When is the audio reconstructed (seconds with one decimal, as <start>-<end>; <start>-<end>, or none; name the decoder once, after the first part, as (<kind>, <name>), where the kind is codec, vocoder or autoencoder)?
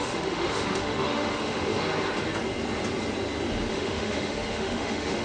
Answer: 0.0-1.7 (autoencoder, DAC-VAE); 3.7-5.2